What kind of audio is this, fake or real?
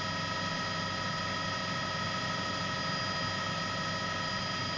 real